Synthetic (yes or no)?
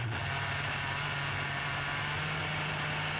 no